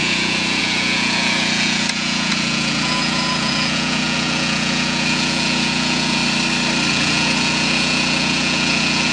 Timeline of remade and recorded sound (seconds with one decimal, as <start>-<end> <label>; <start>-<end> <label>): 0.0-6.2 remade; 6.2-6.9 recorded; 6.9-9.1 remade